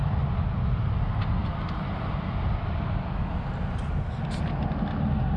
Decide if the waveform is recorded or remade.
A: recorded